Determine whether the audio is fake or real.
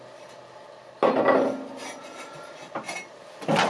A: real